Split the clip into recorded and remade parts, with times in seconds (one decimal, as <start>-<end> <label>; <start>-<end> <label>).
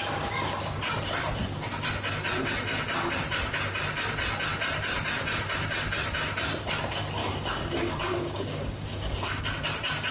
0.0-7.2 recorded; 7.2-9.4 remade; 9.4-10.1 recorded